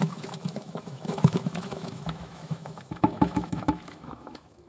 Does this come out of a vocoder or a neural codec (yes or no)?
yes